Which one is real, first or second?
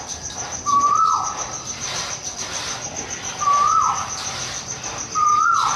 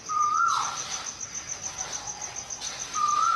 second